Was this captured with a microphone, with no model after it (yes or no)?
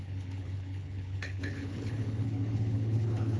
no